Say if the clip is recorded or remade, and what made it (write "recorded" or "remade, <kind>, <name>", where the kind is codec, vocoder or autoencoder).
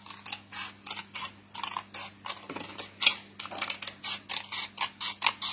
recorded